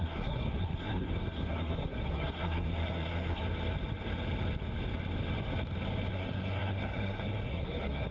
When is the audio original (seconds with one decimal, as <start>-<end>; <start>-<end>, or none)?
3.4-6.1